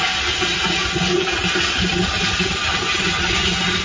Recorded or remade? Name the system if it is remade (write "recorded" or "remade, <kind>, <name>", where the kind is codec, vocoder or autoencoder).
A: recorded